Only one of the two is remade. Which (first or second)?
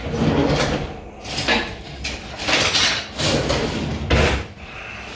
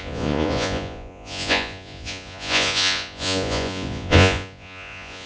second